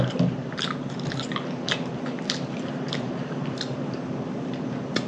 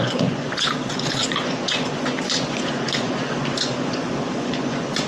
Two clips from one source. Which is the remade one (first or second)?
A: second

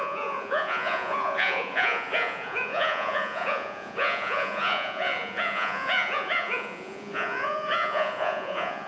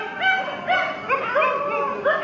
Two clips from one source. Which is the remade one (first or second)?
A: first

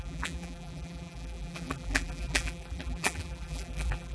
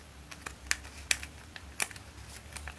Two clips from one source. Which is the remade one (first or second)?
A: first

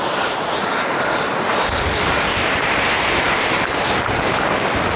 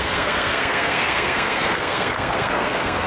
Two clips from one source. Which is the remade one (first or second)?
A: second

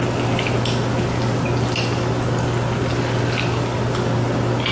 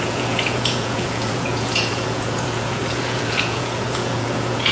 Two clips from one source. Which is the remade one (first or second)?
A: second